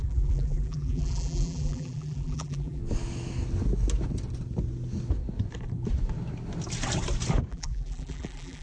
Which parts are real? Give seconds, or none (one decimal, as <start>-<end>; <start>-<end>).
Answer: 2.8-7.5